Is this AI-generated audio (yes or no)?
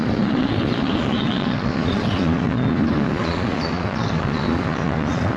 yes